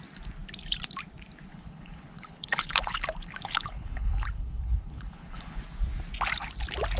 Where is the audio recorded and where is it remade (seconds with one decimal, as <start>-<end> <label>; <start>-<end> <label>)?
0.0-1.5 recorded; 1.5-5.6 remade; 5.6-7.0 recorded